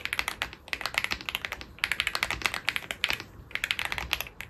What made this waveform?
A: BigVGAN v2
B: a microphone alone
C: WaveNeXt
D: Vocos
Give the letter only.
B